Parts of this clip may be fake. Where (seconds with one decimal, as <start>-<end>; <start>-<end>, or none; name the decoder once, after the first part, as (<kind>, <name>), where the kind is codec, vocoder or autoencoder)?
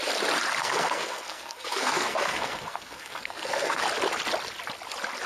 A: 0.6-3.8 (codec, SNAC)